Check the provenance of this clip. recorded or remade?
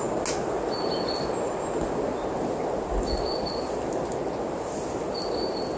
recorded